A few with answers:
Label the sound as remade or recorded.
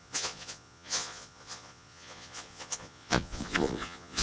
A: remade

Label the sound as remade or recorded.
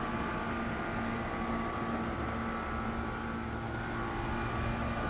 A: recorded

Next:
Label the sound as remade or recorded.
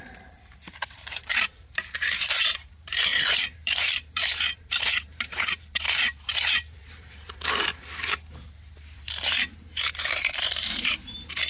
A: remade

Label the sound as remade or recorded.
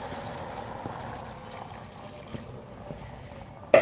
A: recorded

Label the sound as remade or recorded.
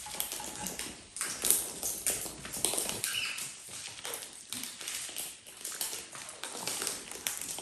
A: remade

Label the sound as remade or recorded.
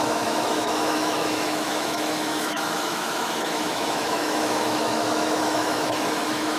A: remade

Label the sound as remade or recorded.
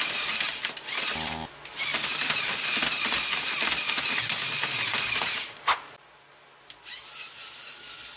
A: recorded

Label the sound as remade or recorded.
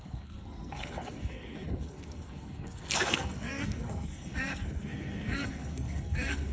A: remade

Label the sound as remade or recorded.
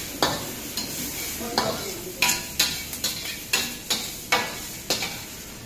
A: recorded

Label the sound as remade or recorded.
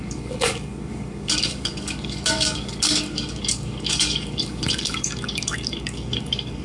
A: remade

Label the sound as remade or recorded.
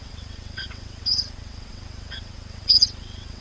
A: remade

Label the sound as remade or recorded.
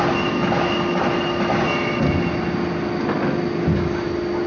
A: recorded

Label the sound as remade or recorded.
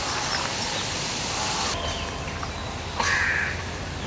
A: recorded